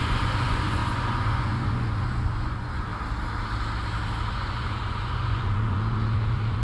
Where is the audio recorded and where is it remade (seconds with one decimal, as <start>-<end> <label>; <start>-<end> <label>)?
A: 0.0-2.9 remade; 2.9-4.3 recorded; 4.3-6.6 remade